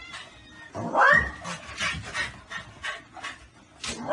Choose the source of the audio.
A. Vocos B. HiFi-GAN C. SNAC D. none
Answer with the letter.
D